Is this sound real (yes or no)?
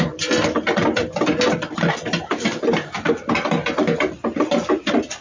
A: yes